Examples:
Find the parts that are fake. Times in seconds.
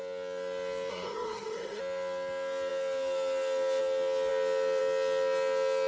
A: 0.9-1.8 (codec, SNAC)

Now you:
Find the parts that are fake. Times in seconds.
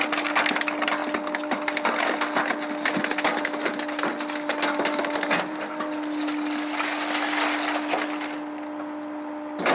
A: none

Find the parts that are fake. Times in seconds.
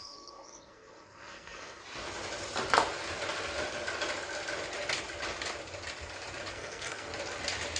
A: 0.0-1.8 (codec, SNAC); 6.5-7.1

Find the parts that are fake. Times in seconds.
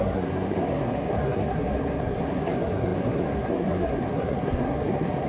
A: 0.0-5.3 (codec, SNAC)